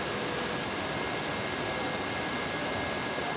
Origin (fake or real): real